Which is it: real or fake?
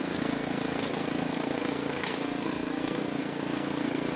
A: fake